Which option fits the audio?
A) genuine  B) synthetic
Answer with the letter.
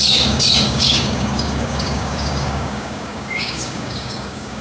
B